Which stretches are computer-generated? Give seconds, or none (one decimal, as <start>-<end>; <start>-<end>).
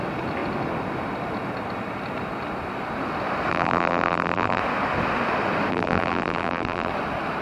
3.5-4.6; 5.7-6.9